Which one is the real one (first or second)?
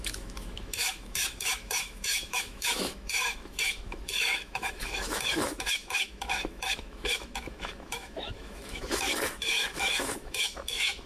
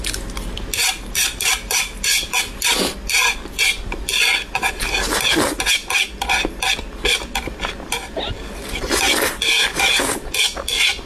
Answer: second